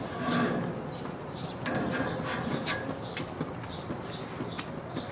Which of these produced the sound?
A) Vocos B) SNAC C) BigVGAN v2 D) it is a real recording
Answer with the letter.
D